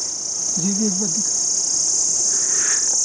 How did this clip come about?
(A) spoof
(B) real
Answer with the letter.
B